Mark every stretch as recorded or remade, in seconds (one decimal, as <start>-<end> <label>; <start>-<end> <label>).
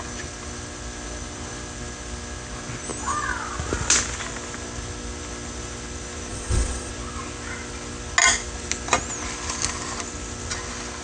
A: 0.0-6.3 recorded; 6.3-6.9 remade; 6.9-11.0 recorded